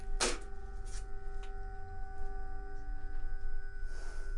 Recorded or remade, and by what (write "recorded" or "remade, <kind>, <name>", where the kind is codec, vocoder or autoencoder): recorded